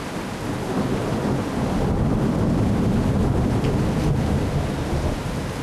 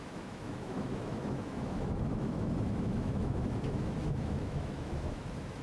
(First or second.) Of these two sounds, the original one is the first